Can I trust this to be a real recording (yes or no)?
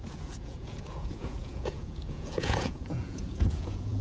no